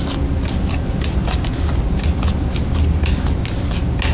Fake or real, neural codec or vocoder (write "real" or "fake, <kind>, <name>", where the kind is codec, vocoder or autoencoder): real